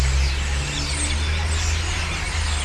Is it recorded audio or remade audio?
recorded